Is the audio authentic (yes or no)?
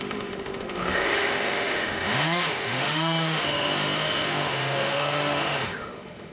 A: no